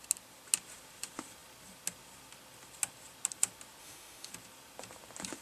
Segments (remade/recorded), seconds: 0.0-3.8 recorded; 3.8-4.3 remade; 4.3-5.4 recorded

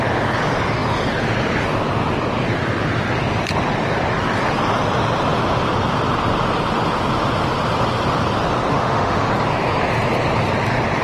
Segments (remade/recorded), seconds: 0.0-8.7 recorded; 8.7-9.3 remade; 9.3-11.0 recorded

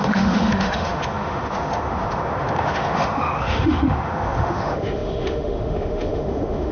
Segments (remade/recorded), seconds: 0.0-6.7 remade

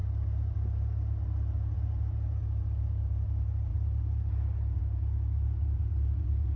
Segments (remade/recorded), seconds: 0.0-6.6 recorded

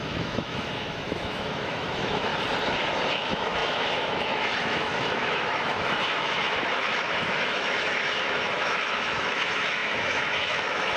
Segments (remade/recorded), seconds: 0.0-2.3 remade; 2.3-3.1 recorded; 3.1-11.0 remade

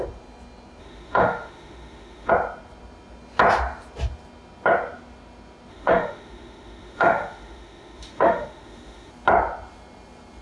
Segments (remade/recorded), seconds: 0.0-0.8 recorded; 0.8-2.3 remade; 2.3-5.7 recorded; 5.7-9.1 remade; 9.1-10.4 recorded